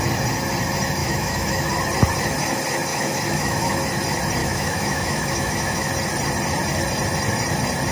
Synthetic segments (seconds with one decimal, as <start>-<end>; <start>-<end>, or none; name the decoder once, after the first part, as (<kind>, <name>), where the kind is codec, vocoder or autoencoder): 1.0-1.7 (autoencoder, DAC-VAE); 2.9-3.7; 4.4-5.9